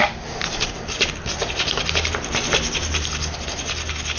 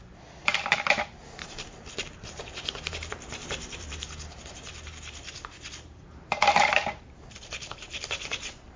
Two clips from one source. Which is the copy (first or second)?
second